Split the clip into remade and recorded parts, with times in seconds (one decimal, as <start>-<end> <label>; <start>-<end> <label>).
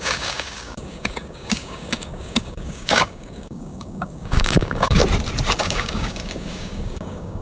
0.0-5.0 remade; 5.0-5.6 recorded; 5.6-7.4 remade